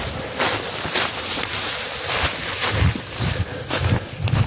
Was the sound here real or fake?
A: real